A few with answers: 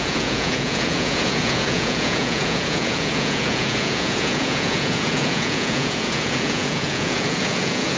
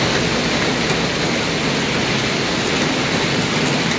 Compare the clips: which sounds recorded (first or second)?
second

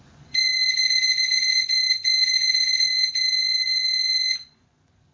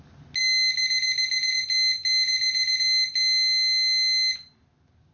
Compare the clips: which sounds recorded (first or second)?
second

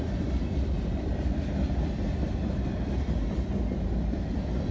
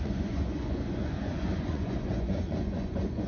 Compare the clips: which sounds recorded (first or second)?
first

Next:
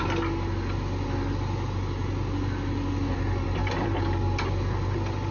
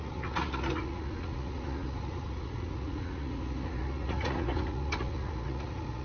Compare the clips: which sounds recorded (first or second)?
first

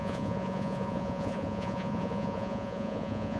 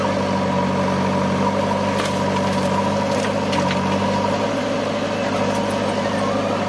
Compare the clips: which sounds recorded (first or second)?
second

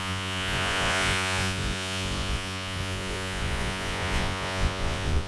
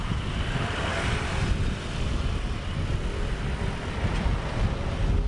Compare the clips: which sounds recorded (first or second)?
second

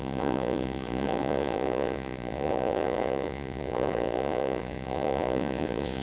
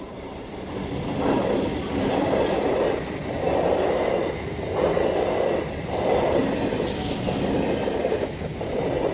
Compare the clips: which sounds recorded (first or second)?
second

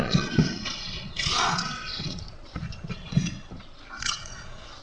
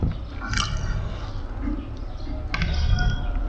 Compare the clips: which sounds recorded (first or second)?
second